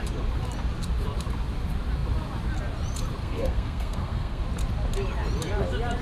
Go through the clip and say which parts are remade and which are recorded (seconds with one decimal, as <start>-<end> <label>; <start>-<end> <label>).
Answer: 0.0-3.2 recorded; 3.2-4.4 remade; 4.4-6.0 recorded